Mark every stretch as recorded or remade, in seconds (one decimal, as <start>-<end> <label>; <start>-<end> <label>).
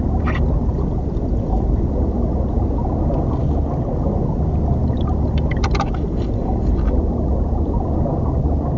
0.0-8.8 recorded